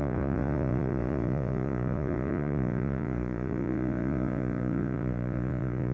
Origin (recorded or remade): remade